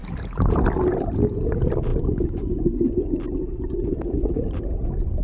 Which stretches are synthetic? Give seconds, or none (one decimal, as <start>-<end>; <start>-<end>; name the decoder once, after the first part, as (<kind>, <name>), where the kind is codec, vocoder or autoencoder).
none